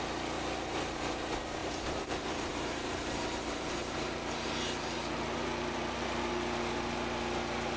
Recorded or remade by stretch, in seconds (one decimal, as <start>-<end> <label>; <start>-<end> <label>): 0.0-1.6 recorded; 1.6-6.3 remade; 6.3-7.8 recorded